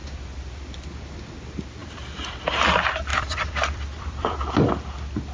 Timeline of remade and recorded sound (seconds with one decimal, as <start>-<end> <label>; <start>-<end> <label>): 0.0-0.5 remade; 0.5-3.1 recorded; 3.1-4.7 remade; 4.7-5.3 recorded